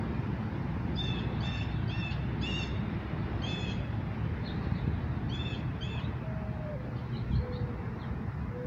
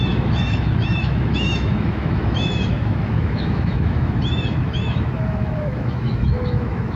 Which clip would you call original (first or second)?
first